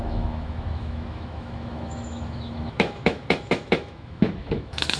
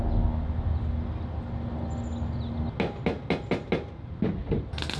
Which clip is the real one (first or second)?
second